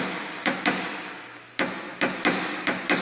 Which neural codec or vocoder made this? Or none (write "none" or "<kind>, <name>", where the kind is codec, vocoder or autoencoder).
none